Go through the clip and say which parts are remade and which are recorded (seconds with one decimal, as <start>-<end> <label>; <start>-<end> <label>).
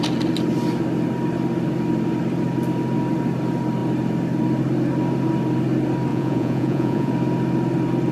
0.0-6.1 recorded; 6.1-7.1 remade; 7.1-8.1 recorded